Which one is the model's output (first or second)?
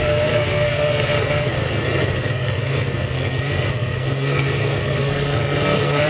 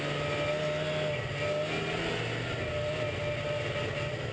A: first